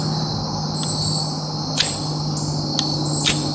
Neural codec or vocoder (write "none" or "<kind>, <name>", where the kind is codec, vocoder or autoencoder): none